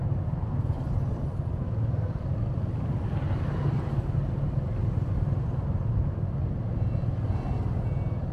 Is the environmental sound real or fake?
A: real